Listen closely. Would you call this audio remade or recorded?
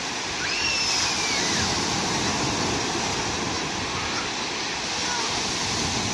recorded